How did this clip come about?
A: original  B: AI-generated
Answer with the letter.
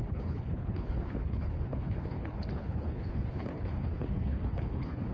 B